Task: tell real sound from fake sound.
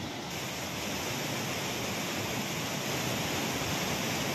real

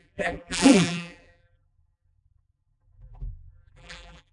fake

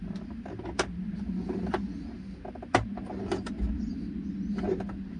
real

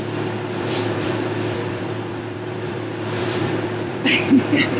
fake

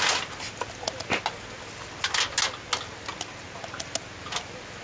real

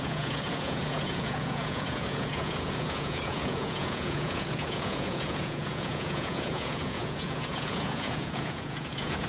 fake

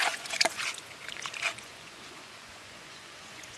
fake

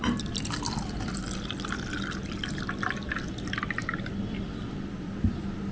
real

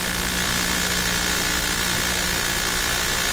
real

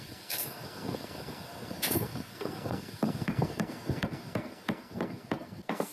fake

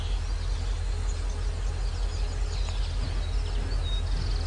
real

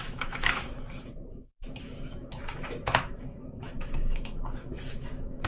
fake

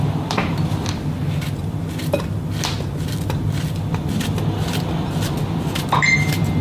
real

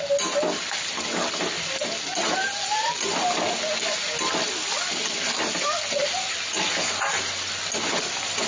real